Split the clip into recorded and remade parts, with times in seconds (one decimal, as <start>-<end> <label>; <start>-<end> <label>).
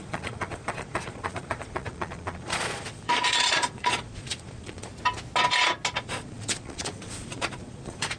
0.0-4.9 remade; 4.9-6.0 recorded; 6.0-8.2 remade